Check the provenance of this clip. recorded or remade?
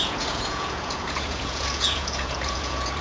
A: remade